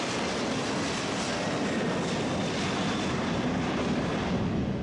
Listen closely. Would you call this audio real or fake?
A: real